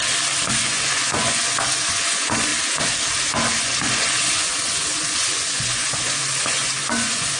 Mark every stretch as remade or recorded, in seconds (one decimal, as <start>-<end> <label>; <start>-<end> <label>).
0.0-0.5 recorded; 0.5-2.5 remade; 2.5-3.6 recorded; 3.6-7.4 remade